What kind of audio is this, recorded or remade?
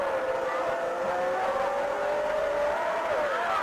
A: recorded